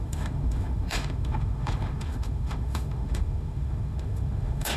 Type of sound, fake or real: fake